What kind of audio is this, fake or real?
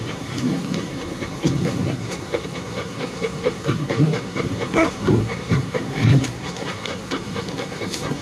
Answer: fake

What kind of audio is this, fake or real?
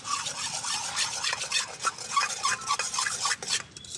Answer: real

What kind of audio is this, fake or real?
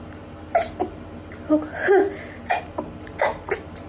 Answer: real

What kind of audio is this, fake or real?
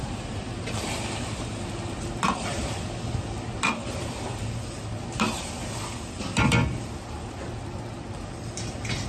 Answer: real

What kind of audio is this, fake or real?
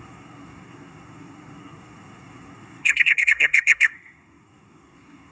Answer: fake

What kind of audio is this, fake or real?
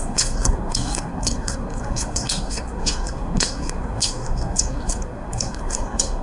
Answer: fake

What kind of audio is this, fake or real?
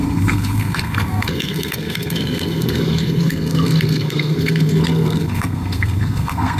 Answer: fake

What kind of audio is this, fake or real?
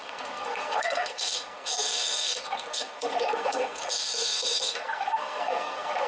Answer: fake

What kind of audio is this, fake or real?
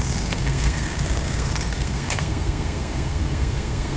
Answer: fake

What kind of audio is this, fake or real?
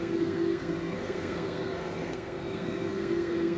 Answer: fake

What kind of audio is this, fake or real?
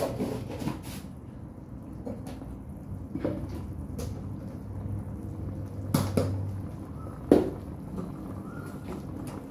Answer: real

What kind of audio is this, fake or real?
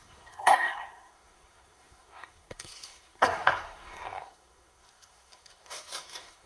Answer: fake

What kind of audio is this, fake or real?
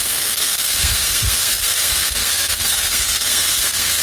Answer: fake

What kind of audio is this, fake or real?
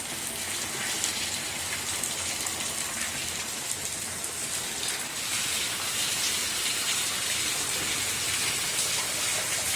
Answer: real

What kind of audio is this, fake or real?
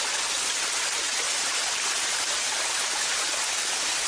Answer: real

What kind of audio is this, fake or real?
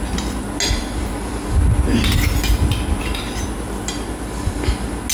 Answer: real